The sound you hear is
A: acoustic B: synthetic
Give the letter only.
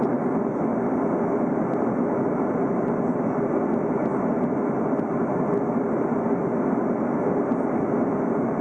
A